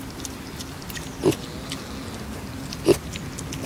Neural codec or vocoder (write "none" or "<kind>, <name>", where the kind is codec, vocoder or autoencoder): none